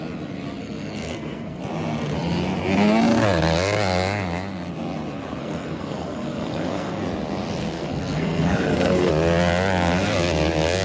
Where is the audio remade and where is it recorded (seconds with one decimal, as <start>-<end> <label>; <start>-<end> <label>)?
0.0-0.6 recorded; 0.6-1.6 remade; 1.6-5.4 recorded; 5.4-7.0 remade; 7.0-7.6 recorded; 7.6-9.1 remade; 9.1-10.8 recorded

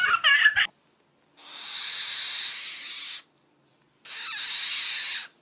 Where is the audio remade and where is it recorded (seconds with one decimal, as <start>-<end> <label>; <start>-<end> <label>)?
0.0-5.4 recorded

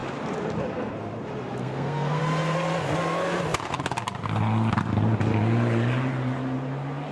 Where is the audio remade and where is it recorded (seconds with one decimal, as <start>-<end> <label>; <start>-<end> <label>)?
0.0-1.6 recorded; 1.6-2.2 remade; 2.2-7.1 recorded

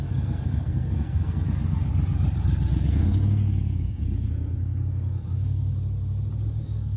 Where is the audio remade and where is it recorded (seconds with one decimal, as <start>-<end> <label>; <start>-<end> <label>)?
0.0-1.9 remade; 1.9-2.7 recorded; 2.7-5.7 remade; 5.7-6.6 recorded; 6.6-7.0 remade

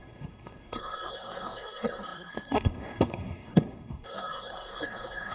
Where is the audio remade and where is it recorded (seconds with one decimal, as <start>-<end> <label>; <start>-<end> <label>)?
0.0-5.3 remade

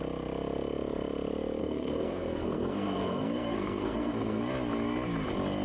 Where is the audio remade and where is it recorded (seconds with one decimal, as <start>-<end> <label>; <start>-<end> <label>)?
0.0-1.6 recorded; 1.6-4.4 remade; 4.4-5.6 recorded